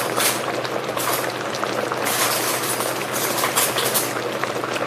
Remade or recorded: recorded